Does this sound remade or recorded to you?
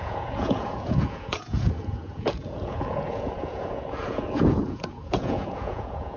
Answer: remade